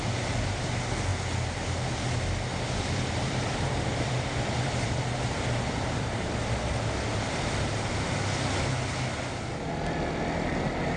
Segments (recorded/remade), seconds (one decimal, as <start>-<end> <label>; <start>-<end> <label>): 0.0-2.5 recorded; 2.5-6.3 remade; 6.3-11.0 recorded